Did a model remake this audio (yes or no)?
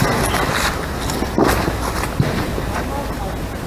no